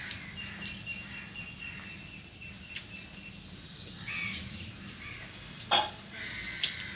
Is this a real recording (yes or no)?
yes